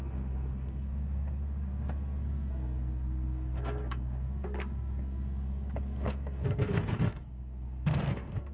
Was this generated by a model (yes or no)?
yes